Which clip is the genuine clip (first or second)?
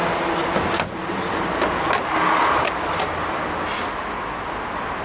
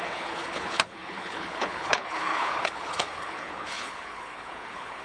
first